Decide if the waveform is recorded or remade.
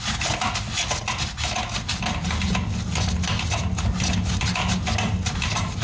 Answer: recorded